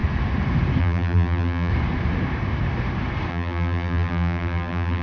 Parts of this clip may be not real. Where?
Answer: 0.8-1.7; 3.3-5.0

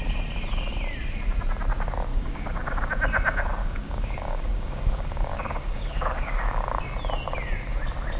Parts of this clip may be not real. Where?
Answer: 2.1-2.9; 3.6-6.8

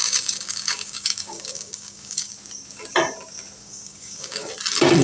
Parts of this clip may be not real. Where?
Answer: 0.0-2.3; 3.6-4.5

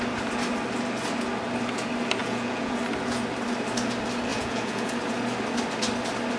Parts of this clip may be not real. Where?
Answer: 2.2-2.7; 4.3-4.9

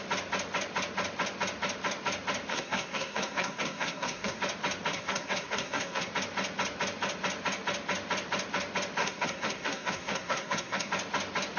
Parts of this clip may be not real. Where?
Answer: 2.5-4.4; 4.9-6.1; 9.0-10.9

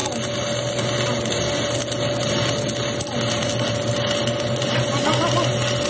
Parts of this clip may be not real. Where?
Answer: none

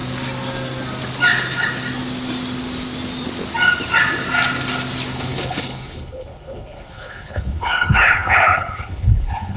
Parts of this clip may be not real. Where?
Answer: 5.1-9.6